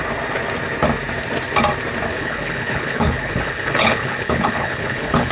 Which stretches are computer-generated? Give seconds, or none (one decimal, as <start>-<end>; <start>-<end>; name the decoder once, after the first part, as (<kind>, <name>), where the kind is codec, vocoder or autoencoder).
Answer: 2.1-5.3 (codec, HILCodec)